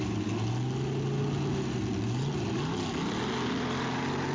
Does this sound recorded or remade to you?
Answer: recorded